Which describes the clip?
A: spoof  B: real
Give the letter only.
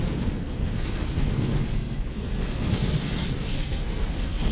A